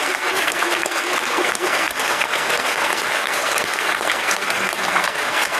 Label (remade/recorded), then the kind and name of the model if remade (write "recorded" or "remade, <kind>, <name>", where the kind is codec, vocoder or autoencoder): remade, codec, SNAC